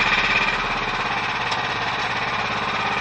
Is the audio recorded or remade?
recorded